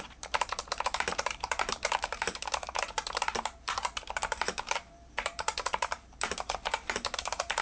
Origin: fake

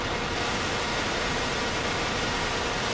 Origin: fake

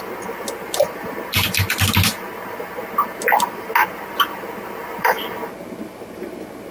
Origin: real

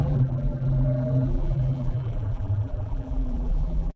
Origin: fake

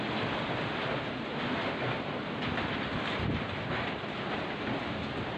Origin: real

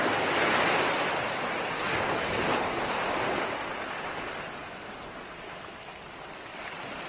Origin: real